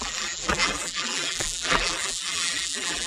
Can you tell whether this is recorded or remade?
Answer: remade